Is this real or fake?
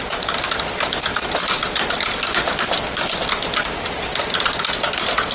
real